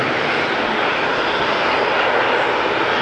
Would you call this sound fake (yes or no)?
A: no